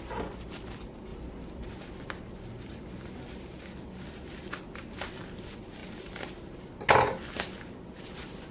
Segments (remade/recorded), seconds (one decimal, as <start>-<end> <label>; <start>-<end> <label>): 0.0-1.1 recorded; 1.1-2.1 remade; 2.1-8.5 recorded